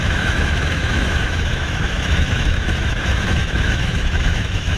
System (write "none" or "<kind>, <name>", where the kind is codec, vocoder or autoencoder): autoencoder, DAC-VAE